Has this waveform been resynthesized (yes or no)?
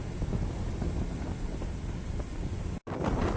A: no